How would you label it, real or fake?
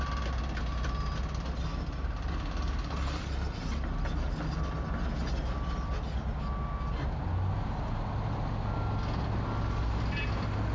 real